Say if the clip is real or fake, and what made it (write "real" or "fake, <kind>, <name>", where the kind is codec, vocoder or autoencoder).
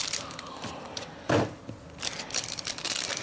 fake, vocoder, BigVGAN v2